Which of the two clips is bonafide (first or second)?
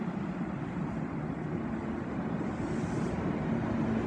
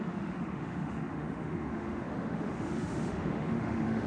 first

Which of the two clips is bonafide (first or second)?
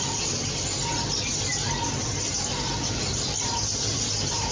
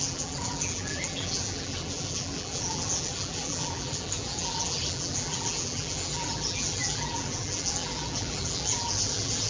first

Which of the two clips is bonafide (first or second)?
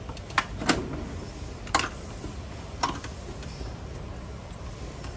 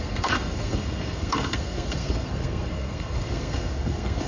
first